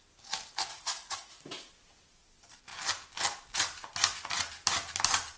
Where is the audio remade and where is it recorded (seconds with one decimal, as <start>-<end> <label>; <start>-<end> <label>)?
0.0-0.7 recorded; 0.7-1.7 remade; 1.7-5.4 recorded